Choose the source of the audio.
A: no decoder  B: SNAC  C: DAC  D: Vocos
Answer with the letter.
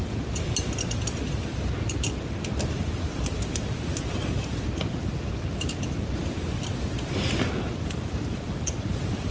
A